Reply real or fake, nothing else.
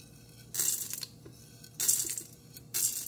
real